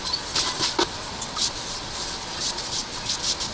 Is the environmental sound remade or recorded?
recorded